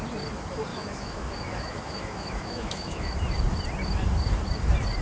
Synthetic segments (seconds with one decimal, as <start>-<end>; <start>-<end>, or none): 0.7-3.2